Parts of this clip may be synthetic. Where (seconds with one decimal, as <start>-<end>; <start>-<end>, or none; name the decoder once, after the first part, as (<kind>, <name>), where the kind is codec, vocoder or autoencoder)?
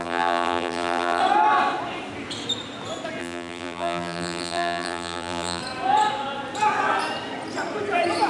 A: 0.0-1.2 (vocoder, BigVGAN v2); 3.2-5.6